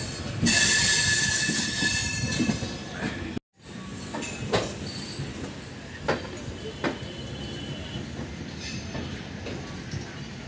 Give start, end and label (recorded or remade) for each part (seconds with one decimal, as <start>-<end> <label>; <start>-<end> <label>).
0.0-10.5 recorded